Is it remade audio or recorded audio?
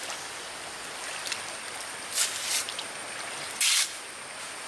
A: recorded